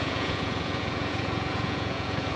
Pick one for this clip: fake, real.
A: fake